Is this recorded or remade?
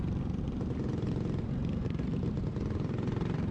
recorded